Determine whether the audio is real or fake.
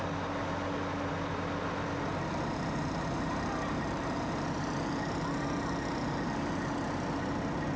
real